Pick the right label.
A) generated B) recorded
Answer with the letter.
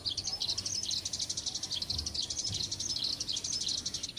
B